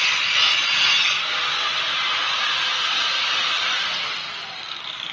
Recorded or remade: recorded